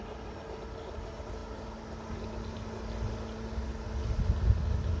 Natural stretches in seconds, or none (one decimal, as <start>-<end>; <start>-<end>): 0.0-5.0

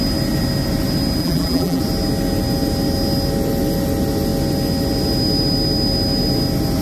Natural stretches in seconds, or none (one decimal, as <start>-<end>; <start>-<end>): 0.0-1.2; 1.8-6.8

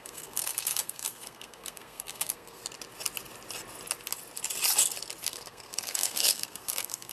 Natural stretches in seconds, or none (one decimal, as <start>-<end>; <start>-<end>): 2.6-5.2

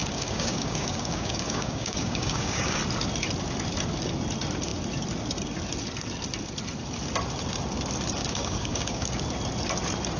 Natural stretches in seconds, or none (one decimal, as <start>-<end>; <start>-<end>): 2.8-8.2; 9.2-10.2